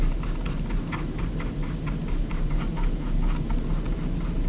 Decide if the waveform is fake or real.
real